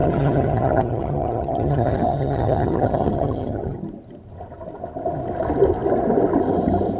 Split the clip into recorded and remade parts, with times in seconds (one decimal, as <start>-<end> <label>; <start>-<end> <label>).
0.0-3.8 remade; 3.8-7.0 recorded